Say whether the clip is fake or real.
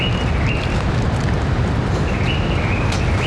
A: real